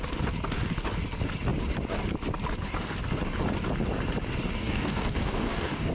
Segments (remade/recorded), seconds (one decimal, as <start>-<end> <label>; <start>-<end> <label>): 0.0-4.6 recorded; 4.6-5.9 remade